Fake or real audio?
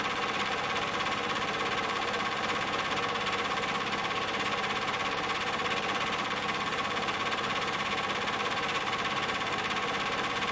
fake